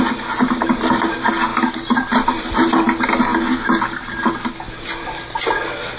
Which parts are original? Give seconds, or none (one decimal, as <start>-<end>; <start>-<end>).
0.0-6.0